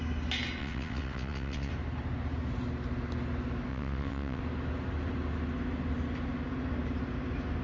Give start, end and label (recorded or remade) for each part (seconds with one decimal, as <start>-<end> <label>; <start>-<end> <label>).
0.0-0.6 recorded; 0.6-1.7 remade; 1.7-3.7 recorded; 3.7-4.4 remade; 4.4-7.6 recorded